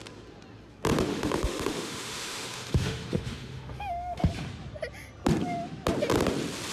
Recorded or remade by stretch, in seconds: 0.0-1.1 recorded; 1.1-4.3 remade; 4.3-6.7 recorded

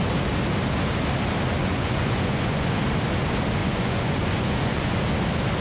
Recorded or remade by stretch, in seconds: 0.0-1.6 recorded; 1.6-2.8 remade; 2.8-3.6 recorded; 3.6-5.0 remade; 5.0-5.6 recorded

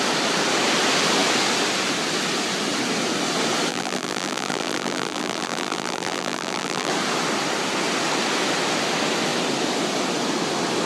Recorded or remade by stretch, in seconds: 0.0-3.7 recorded; 3.7-6.9 remade; 6.9-10.9 recorded